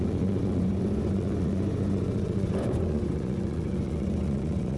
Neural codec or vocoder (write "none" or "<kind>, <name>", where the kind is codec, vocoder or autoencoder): vocoder, Vocos